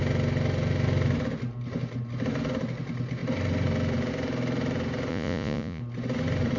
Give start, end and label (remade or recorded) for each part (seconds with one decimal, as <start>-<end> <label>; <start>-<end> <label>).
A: 0.0-5.1 recorded; 5.1-5.8 remade; 5.8-6.6 recorded